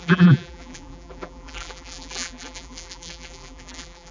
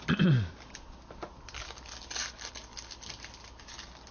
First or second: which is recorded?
second